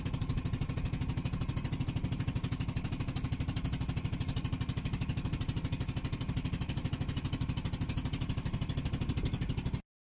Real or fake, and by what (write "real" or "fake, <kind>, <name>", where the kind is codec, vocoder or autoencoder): real